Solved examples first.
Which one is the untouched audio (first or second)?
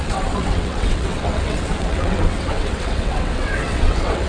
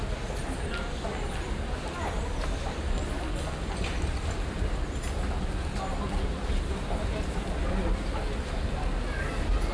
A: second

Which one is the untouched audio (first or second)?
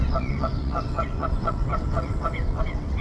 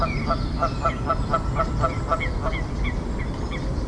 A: second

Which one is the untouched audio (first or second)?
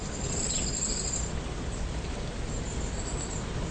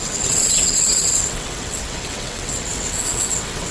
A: first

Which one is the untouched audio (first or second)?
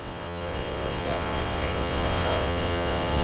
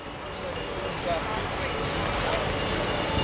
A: second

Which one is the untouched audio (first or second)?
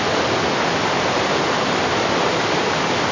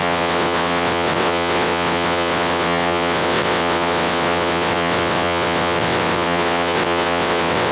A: first